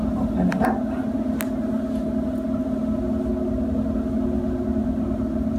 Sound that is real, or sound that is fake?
real